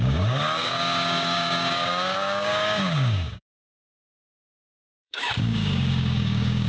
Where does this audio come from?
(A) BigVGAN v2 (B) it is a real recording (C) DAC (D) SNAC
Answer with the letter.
C